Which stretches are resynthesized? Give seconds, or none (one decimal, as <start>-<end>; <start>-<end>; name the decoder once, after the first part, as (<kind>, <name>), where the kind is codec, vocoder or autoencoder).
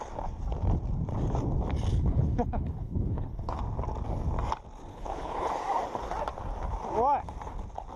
1.9-3.6 (codec, HILCodec); 4.9-5.5